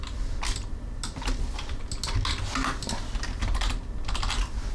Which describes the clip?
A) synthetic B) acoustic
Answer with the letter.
B